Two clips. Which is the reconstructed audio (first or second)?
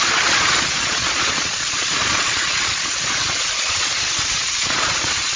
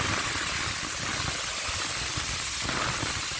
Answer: first